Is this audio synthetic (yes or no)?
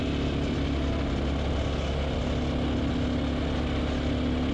no